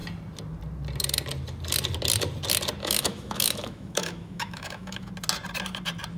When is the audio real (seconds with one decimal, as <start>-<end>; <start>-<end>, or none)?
0.0-2.8; 5.1-6.2